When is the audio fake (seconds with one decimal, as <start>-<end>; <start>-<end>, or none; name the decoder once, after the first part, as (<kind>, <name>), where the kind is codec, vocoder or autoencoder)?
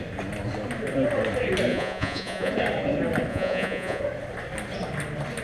1.7-2.5 (vocoder, Vocos); 3.3-4.0